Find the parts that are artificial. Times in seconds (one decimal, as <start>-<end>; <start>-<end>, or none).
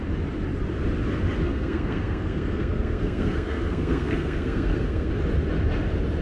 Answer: 1.4-5.1